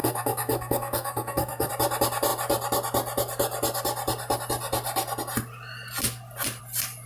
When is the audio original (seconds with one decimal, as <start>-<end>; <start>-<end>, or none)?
1.7-7.1